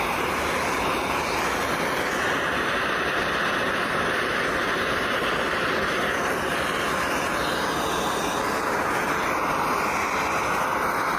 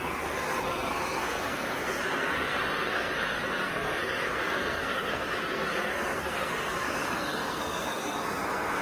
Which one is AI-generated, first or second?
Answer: second